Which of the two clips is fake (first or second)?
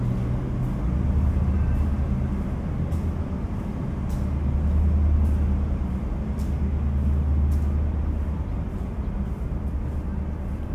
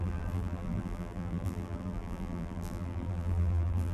second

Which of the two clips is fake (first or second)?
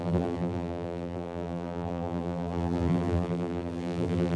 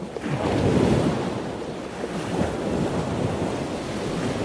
first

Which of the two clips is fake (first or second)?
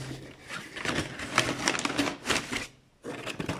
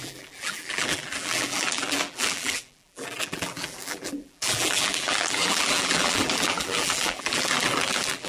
second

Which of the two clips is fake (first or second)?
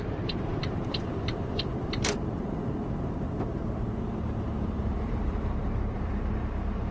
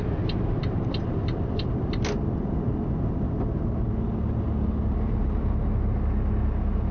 first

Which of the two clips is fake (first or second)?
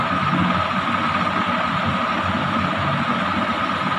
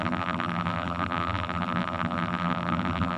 second